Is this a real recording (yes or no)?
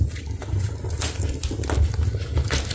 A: yes